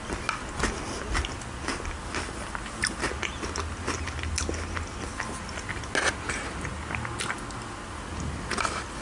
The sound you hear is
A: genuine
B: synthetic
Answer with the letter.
A